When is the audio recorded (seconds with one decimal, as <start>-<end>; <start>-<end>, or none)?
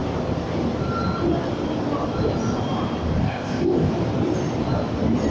0.0-3.2; 3.9-5.3